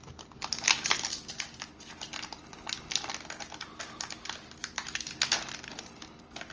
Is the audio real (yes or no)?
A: yes